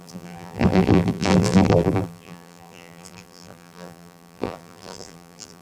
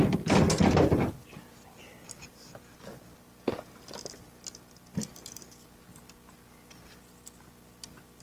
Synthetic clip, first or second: first